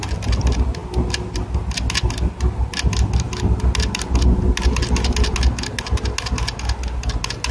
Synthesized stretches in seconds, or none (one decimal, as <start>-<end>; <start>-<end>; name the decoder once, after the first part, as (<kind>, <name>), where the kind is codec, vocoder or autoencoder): none